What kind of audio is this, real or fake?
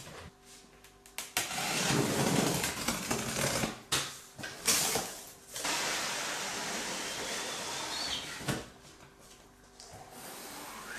real